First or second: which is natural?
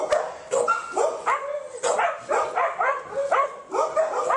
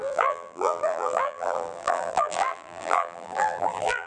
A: first